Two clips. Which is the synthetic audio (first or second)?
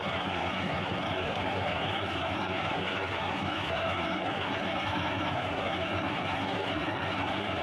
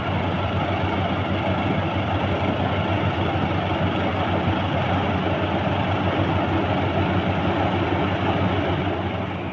first